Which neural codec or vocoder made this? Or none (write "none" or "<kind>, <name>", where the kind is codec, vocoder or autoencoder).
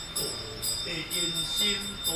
none